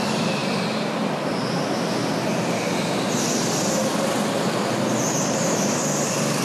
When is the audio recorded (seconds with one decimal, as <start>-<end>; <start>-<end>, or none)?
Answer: 0.0-6.4